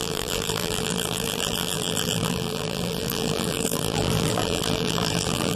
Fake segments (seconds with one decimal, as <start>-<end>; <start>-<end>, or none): 0.0-5.6